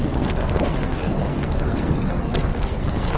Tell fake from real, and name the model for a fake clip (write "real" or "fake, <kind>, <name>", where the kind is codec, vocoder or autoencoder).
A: fake, codec, SNAC